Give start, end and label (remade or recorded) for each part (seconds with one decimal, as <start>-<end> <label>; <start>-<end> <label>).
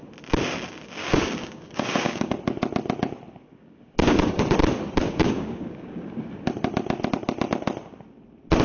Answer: 0.0-1.0 recorded; 1.0-2.4 remade; 2.4-3.5 recorded; 3.5-4.4 remade; 4.4-5.0 recorded; 5.0-6.0 remade; 6.0-8.6 recorded